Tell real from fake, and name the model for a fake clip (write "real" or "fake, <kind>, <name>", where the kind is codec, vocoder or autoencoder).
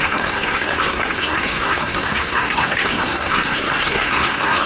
fake, codec, SNAC